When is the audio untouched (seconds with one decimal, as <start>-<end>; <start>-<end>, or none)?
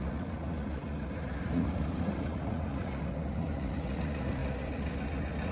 none